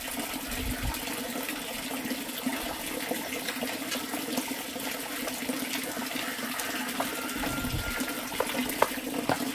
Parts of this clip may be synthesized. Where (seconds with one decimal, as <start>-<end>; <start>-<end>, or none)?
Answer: none